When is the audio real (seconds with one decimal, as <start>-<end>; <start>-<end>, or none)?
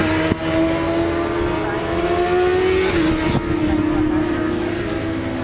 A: 0.0-5.4